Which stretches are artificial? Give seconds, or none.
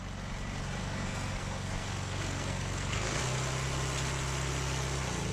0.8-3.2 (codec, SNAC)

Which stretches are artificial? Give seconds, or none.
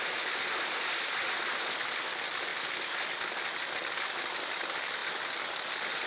none